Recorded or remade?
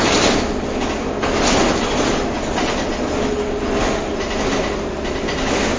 recorded